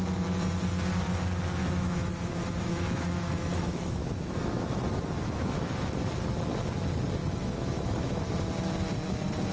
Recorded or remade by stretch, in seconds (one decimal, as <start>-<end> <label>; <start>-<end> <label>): 0.0-1.6 recorded; 1.6-5.9 remade; 5.9-7.2 recorded; 7.2-8.3 remade; 8.3-9.5 recorded